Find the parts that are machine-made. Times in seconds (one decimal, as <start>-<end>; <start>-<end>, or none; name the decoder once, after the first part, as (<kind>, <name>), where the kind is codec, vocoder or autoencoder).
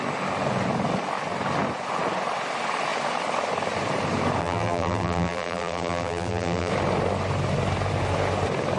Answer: 4.4-6.7 (vocoder, BigVGAN v2)